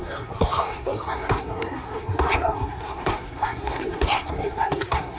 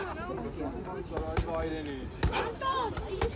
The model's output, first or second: first